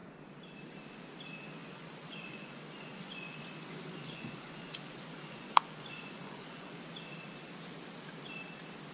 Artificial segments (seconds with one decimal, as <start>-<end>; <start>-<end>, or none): 1.6-6.8